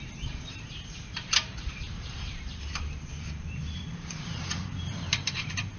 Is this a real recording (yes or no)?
no